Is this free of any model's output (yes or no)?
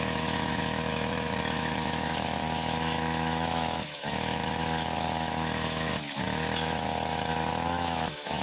no